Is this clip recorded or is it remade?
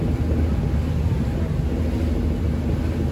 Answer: recorded